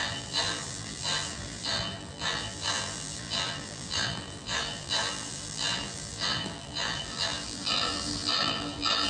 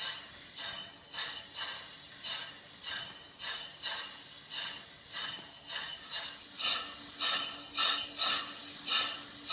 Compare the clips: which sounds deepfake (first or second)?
first